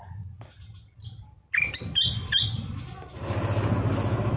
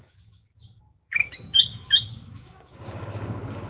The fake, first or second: second